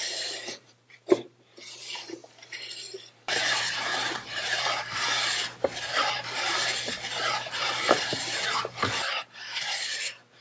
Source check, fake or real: fake